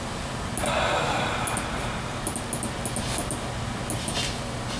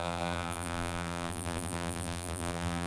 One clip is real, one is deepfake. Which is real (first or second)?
first